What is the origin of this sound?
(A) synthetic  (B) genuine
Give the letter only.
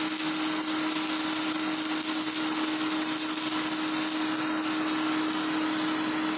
B